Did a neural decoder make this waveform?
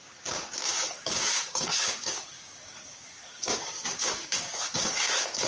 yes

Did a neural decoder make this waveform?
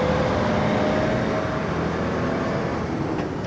no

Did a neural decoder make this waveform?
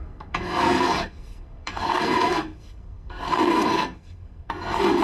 yes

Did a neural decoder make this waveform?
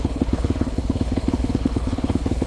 yes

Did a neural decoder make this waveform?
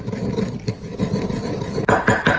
no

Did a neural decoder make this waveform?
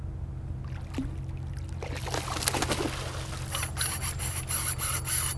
no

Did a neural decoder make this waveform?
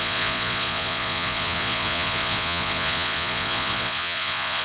yes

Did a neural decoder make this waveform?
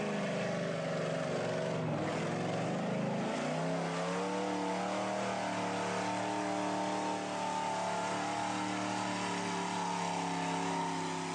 no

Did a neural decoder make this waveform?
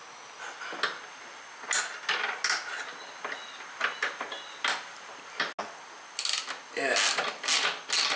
no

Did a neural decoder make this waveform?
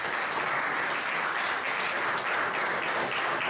no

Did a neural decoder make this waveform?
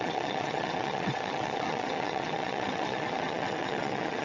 yes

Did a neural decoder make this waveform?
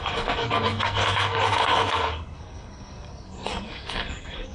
yes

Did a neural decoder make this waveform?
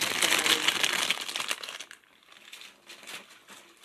no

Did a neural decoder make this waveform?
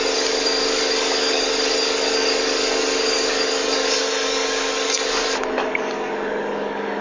yes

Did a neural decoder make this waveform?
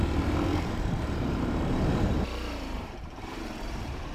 yes